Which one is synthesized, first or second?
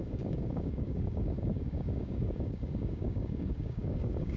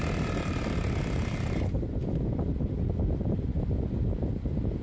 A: first